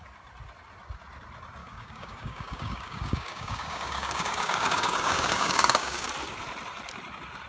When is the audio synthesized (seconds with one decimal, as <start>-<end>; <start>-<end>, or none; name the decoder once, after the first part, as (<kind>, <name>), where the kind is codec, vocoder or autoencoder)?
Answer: 1.6-6.1 (codec, DAC)